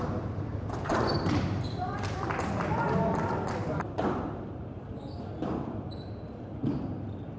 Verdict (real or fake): fake